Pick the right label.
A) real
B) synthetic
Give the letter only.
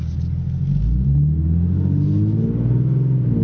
A